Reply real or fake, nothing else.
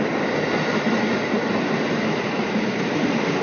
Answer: real